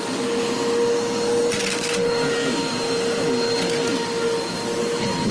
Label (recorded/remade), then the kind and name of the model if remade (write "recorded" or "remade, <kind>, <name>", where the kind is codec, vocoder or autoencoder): recorded